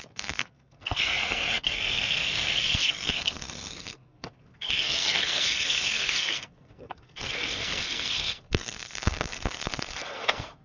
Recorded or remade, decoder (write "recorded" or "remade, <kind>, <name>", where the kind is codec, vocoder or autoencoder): remade, codec, SNAC